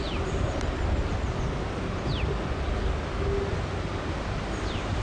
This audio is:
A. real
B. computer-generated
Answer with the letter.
A